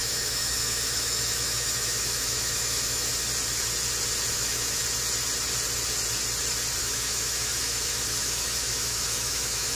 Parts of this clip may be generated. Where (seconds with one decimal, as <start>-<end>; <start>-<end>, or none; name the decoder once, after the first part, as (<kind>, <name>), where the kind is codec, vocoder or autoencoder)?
0.0-3.1 (autoencoder, DAC-VAE); 4.3-4.8; 6.8-9.7